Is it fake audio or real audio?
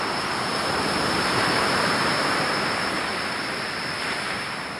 fake